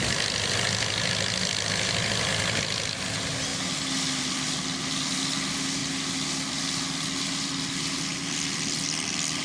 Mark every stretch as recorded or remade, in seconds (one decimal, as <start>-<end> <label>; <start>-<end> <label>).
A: 0.0-9.4 recorded